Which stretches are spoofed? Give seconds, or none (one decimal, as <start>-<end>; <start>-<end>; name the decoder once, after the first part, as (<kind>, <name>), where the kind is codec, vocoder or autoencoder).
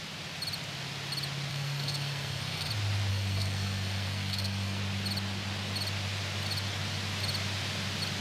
1.5-2.7 (codec, SNAC); 3.1-4.8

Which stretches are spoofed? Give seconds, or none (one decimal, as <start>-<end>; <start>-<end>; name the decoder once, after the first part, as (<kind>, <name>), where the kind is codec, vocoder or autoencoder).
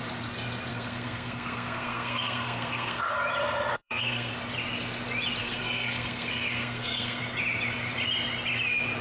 0.7-3.1 (codec, SNAC); 3.7-4.3; 5.4-7.2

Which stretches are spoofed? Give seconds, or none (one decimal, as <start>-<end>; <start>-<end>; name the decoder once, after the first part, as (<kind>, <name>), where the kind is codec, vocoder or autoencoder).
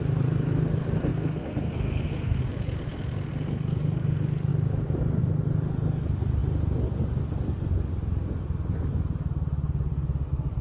1.1-2.4 (codec, SNAC)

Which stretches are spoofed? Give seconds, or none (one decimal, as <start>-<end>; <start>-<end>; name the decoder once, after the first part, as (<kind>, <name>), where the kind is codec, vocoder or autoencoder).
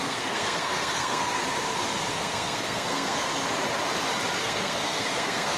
0.0-1.4 (codec, SNAC); 2.1-3.3; 4.4-5.6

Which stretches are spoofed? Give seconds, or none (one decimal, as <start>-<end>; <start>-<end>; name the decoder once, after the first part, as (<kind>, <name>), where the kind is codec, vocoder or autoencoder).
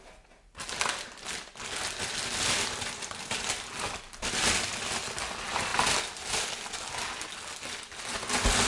none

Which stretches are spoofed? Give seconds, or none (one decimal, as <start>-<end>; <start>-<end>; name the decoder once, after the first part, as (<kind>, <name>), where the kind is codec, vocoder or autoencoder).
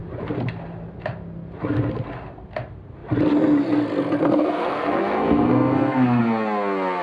4.2-6.2 (codec, SNAC)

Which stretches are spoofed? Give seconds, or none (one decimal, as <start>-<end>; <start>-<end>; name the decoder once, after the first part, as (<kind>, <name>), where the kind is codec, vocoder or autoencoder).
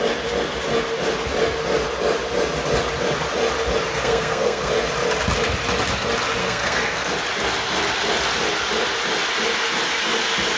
3.9-4.7 (codec, SNAC); 6.4-7.1